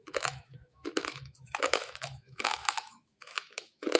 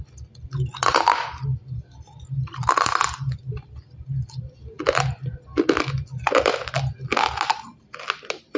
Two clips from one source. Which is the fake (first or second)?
first